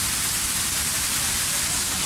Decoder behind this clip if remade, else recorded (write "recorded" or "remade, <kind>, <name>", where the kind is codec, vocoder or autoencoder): recorded